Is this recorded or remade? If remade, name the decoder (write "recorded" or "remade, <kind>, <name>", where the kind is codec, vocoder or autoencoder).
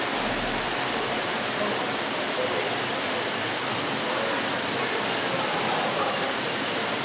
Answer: recorded